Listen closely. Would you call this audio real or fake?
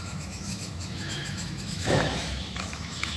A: fake